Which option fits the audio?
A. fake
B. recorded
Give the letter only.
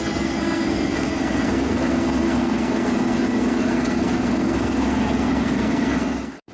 A